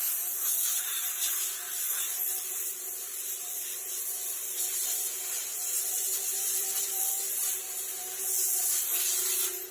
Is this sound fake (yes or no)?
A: yes